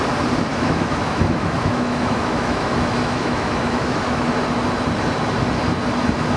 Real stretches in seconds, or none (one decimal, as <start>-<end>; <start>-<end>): 0.0-0.5; 4.3-6.4